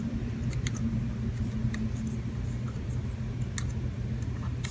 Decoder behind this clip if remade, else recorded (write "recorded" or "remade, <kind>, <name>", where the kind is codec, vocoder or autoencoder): recorded